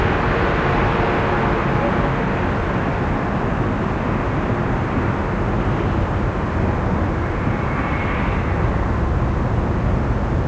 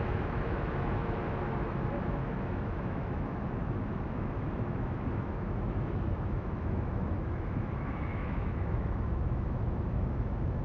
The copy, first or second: second